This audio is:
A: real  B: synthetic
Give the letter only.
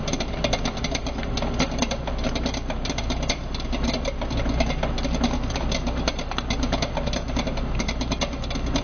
A